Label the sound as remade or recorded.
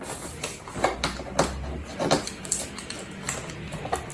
recorded